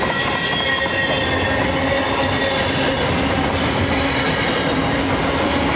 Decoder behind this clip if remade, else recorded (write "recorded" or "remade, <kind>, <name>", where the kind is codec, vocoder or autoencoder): recorded